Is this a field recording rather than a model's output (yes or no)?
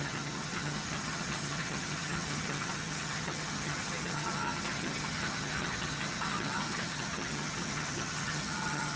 no